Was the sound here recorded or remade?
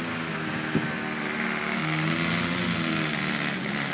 recorded